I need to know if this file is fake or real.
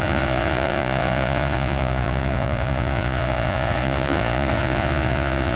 fake